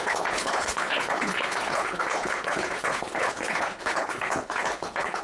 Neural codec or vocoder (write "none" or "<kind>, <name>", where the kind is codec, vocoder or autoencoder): codec, HILCodec